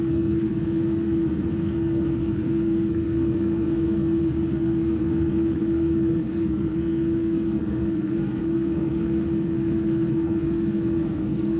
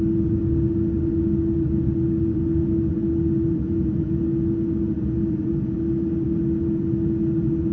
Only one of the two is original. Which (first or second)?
second